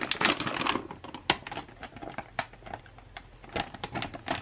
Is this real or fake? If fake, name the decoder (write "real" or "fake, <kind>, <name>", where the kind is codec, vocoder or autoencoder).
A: real